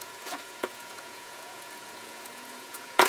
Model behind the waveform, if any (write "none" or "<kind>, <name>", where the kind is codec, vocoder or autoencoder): vocoder, Vocos